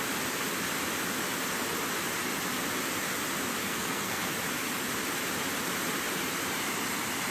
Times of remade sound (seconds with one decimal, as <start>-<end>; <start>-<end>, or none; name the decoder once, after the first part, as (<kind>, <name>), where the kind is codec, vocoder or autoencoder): 3.6-4.3 (codec, SNAC)